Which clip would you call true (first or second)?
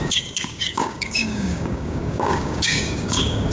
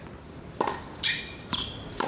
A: second